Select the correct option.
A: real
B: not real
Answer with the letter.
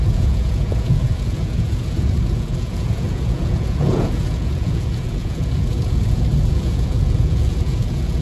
B